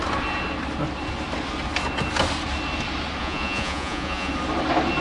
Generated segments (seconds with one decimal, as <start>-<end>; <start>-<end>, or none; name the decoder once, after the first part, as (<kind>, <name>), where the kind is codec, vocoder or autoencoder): 3.2-4.3 (vocoder, Vocos)